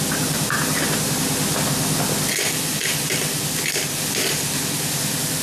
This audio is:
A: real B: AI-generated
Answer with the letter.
A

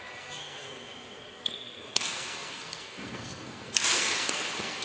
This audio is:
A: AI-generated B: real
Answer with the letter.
A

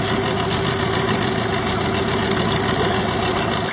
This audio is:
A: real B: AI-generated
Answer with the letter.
A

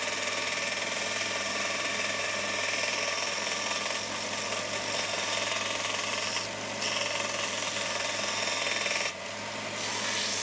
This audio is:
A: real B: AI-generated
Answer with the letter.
A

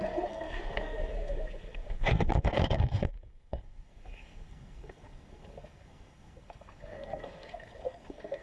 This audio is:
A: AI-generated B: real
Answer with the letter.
A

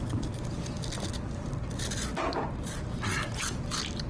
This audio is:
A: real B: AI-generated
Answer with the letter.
A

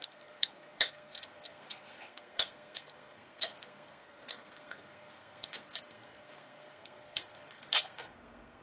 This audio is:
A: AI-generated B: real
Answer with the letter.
A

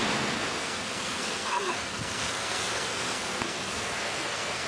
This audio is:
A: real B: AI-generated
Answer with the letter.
B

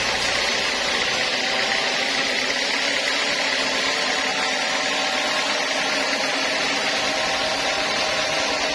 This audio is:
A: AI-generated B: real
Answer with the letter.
B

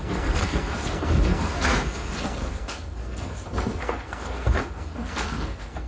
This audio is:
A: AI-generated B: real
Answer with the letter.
A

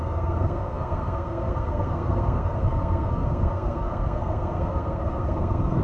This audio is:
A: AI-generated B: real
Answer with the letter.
A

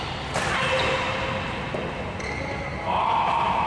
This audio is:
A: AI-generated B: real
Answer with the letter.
B